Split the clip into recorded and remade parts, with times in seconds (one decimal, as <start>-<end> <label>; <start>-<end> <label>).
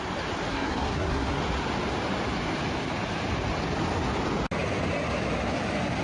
0.0-0.5 recorded; 0.5-1.4 remade; 1.4-6.0 recorded